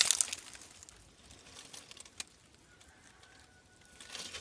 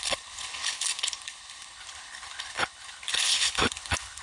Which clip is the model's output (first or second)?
second